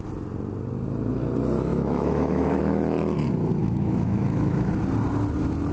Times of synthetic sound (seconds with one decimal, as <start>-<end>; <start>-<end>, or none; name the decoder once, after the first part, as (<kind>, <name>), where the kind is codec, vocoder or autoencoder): 1.7-2.6 (autoencoder, DAC-VAE); 3.6-4.7